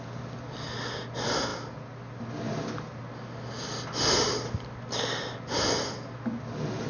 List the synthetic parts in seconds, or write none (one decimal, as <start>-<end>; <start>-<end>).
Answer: none